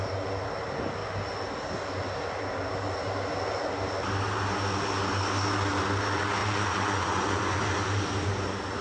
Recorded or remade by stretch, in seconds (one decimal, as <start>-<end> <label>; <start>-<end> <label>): 0.0-6.4 recorded; 6.4-7.6 remade; 7.6-8.8 recorded